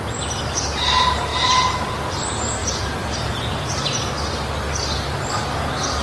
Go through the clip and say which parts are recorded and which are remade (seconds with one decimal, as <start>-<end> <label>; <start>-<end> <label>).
0.0-2.6 recorded; 2.6-4.1 remade; 4.1-6.0 recorded